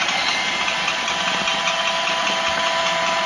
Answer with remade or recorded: remade